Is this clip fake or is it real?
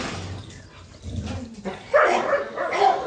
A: real